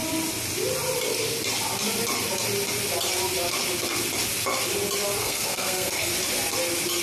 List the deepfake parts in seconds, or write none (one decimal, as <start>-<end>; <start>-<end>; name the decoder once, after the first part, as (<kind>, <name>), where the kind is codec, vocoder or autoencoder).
5.2-6.1 (codec, SNAC)